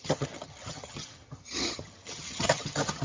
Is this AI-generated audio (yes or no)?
yes